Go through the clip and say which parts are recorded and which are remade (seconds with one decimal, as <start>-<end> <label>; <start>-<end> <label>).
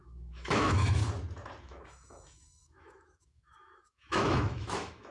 0.0-1.0 remade; 1.0-1.6 recorded; 1.6-5.1 remade